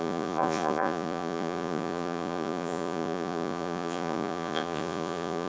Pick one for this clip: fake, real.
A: fake